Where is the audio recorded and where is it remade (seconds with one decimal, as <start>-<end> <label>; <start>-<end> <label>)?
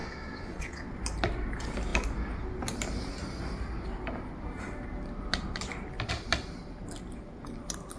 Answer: 0.0-0.9 remade; 0.9-8.0 recorded